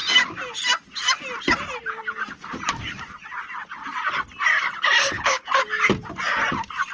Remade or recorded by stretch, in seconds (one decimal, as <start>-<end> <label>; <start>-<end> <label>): 0.0-5.0 recorded; 5.0-5.6 remade; 5.6-6.9 recorded